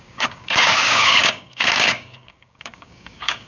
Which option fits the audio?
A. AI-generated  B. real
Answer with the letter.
A